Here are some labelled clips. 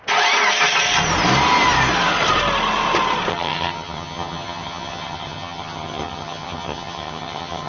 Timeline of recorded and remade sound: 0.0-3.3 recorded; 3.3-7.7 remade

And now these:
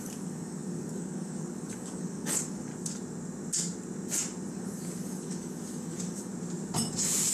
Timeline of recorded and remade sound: 0.0-2.7 remade; 2.7-4.5 recorded; 4.5-6.3 remade; 6.3-7.3 recorded

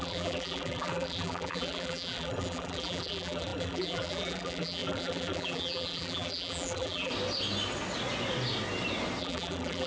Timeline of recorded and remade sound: 0.0-7.1 remade; 7.1-9.2 recorded; 9.2-9.9 remade

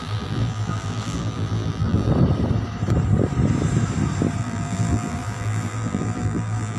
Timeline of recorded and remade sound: 0.0-2.1 remade; 2.1-4.4 recorded; 4.4-6.8 remade

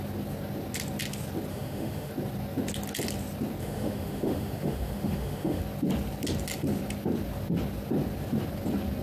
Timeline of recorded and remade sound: 0.0-1.5 recorded; 1.5-2.1 remade; 2.1-3.6 recorded; 3.6-5.6 remade; 5.6-9.0 recorded

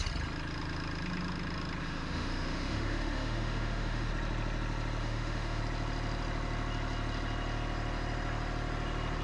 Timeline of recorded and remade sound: 0.0-1.8 recorded; 1.8-4.1 remade; 4.1-5.0 recorded; 5.0-5.6 remade; 5.6-9.2 recorded